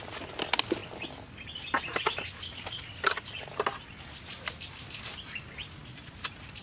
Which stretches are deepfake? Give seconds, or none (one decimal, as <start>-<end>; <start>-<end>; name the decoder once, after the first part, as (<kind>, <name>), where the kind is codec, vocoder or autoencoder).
none